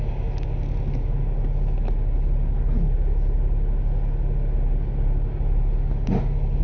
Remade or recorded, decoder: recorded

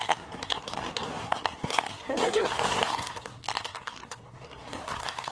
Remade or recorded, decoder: remade, codec, SNAC